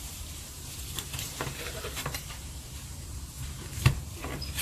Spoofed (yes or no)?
yes